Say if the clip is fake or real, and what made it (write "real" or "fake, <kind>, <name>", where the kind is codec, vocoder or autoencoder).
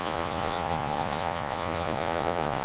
fake, vocoder, Vocos